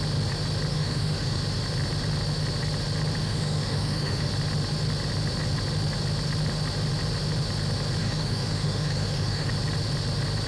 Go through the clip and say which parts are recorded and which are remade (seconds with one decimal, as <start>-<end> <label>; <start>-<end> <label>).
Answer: 0.0-0.7 recorded; 0.7-1.4 remade; 1.4-3.2 recorded; 3.2-4.3 remade; 4.3-8.0 recorded; 8.0-9.5 remade; 9.5-10.5 recorded